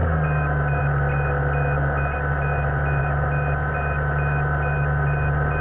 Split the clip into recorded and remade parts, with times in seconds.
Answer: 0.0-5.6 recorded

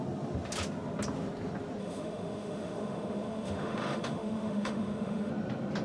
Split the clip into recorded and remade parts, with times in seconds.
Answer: 0.0-1.8 recorded; 1.8-5.3 remade; 5.3-5.8 recorded

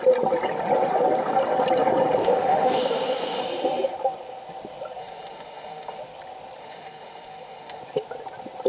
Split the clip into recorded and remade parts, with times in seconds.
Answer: 0.0-2.2 recorded; 2.2-3.4 remade; 3.4-5.0 recorded; 5.0-6.0 remade; 6.0-6.6 recorded; 6.6-7.8 remade; 7.8-8.7 recorded